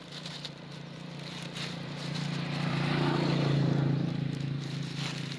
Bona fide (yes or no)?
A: no